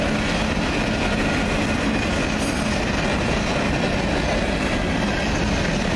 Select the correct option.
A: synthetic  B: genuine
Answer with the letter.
B